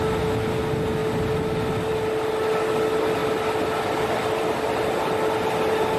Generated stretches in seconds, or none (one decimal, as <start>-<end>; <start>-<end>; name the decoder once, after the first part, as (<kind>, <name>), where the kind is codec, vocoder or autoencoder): none